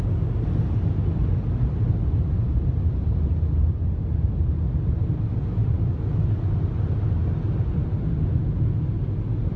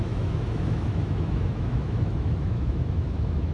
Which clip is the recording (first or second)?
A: first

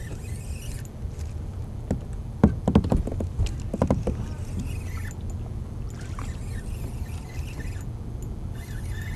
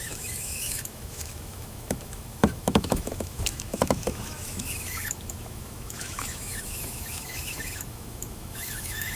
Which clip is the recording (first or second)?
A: first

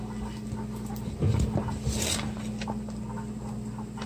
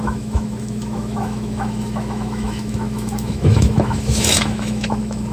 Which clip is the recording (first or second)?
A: first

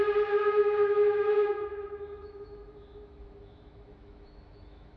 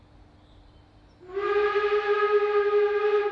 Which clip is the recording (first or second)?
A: second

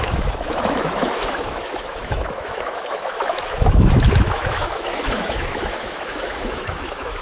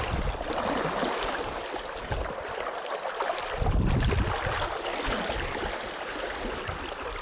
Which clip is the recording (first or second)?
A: second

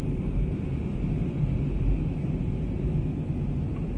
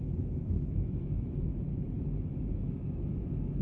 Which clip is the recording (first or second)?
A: first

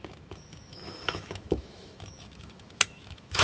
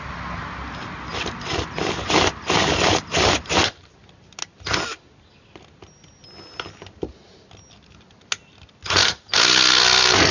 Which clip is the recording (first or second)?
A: second